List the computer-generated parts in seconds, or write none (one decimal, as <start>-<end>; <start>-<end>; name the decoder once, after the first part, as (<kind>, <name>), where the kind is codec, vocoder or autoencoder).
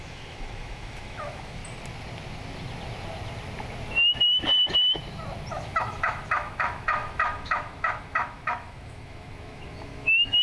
0.0-1.6 (autoencoder, DAC-VAE); 5.5-10.4